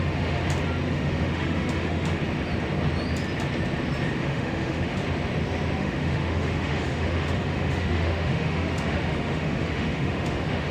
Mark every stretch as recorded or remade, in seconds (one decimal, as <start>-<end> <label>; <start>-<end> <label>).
0.0-0.4 remade; 0.4-0.9 recorded; 0.9-2.2 remade; 2.2-4.2 recorded; 4.2-5.0 remade; 5.0-5.8 recorded; 5.8-10.7 remade